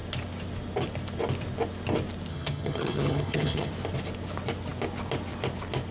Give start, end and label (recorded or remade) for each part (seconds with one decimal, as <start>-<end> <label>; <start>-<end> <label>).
0.0-2.3 recorded; 2.3-3.7 remade; 3.7-5.9 recorded